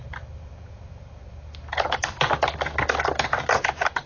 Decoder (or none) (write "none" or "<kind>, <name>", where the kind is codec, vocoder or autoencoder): none